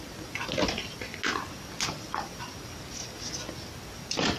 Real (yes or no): yes